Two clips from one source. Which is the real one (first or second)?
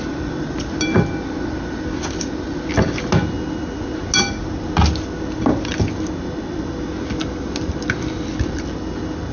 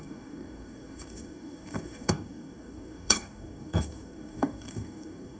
first